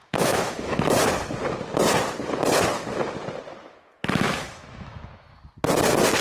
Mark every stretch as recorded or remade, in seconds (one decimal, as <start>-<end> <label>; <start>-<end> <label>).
0.0-0.8 remade; 0.8-3.6 recorded; 3.6-5.4 remade; 5.4-6.2 recorded